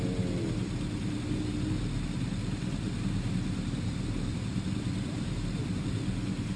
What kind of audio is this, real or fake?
real